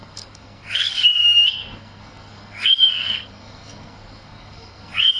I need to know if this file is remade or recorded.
remade